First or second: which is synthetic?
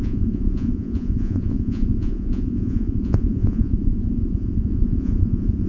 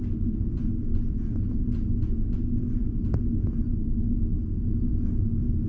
first